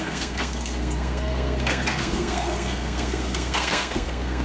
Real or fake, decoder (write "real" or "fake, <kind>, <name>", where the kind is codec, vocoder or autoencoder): fake, codec, SNAC